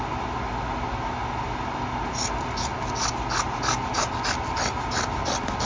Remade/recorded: recorded